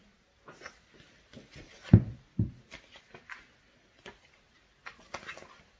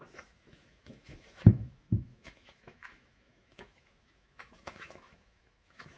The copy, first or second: second